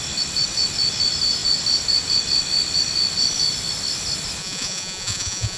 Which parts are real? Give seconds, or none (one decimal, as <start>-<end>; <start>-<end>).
0.0-4.4